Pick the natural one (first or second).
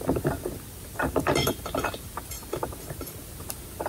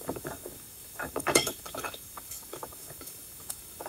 first